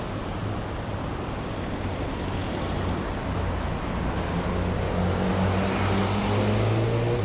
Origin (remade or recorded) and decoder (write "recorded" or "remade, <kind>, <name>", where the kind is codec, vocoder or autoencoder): recorded